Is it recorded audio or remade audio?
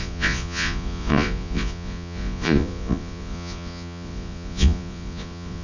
remade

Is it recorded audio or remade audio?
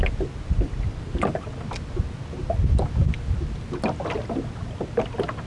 recorded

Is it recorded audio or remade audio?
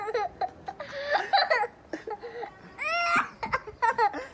recorded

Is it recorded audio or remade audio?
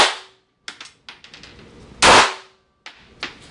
recorded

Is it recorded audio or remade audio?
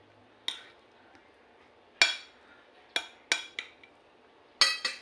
recorded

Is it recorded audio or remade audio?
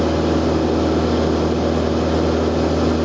recorded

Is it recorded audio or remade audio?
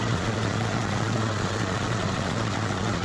remade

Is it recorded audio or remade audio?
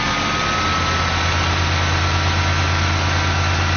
recorded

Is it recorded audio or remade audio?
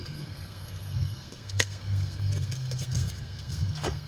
remade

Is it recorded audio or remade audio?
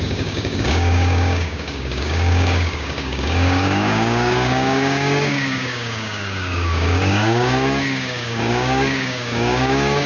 remade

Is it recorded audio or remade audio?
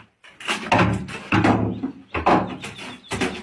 recorded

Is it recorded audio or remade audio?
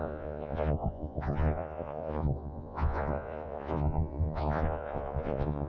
remade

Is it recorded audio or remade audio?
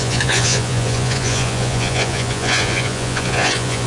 remade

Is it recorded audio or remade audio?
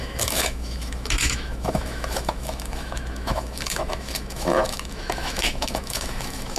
remade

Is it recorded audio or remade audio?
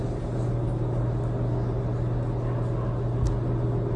recorded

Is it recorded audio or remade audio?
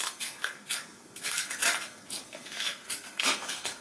remade